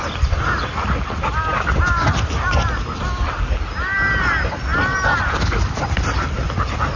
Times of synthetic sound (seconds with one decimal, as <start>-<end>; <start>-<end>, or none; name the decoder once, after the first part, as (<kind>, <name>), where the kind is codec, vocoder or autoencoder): none